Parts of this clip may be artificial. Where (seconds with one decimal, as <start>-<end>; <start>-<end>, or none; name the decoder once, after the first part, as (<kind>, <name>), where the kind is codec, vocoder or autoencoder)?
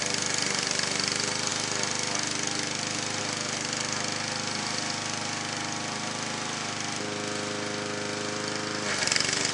none